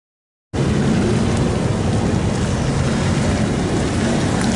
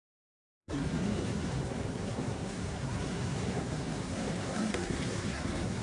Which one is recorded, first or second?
first